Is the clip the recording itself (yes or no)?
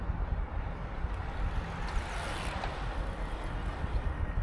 yes